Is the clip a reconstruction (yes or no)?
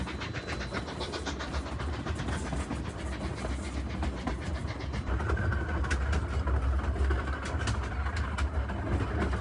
no